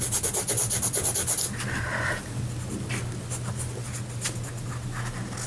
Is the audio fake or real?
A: real